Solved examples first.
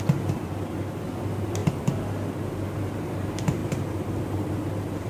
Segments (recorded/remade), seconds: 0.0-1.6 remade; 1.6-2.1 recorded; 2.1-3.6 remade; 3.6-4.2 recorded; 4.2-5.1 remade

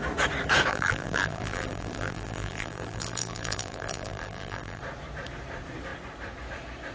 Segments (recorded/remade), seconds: 0.0-0.7 recorded; 0.7-4.8 remade; 4.8-6.9 recorded

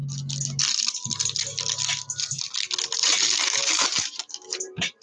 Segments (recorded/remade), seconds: 0.0-3.0 recorded; 3.0-5.0 remade